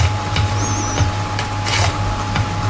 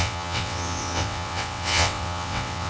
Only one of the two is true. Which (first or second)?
first